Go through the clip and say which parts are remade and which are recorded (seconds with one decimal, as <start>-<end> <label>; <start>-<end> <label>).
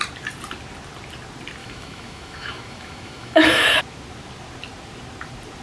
0.0-1.6 recorded; 1.6-3.8 remade; 3.8-5.6 recorded